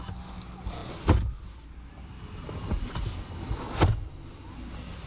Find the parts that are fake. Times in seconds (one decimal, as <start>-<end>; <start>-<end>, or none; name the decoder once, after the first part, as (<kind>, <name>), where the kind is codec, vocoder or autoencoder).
none